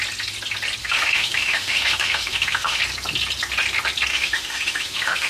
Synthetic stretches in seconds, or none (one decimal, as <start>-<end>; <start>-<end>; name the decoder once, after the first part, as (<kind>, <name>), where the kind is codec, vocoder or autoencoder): 0.8-2.8 (autoencoder, DAC-VAE); 4.1-5.3